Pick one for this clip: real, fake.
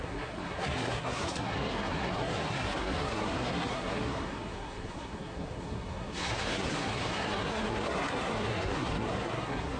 fake